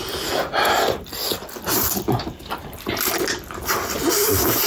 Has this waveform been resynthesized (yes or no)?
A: no